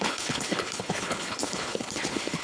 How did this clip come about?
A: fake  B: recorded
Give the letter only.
A